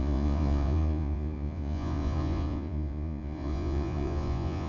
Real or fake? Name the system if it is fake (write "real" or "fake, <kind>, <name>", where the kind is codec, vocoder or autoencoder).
fake, vocoder, Vocos